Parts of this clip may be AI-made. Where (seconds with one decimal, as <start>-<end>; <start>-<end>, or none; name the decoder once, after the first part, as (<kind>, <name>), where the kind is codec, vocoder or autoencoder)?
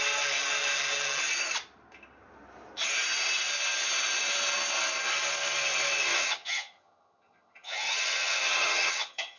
6.1-9.4 (vocoder, HiFi-GAN)